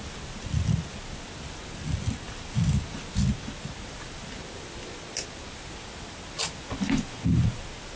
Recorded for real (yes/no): yes